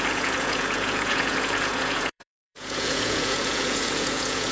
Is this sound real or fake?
fake